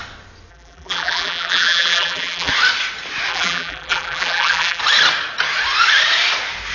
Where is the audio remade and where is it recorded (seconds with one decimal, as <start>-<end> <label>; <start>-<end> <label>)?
0.0-0.5 recorded; 0.5-2.5 remade; 2.5-3.3 recorded; 3.3-4.8 remade; 4.8-6.7 recorded